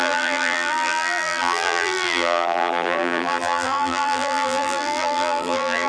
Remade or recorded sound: remade